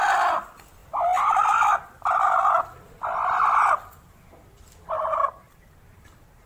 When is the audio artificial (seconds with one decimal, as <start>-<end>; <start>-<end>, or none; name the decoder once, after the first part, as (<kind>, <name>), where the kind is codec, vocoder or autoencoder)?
5.2-6.5 (vocoder, BigVGAN v2)